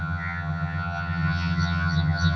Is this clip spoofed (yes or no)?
yes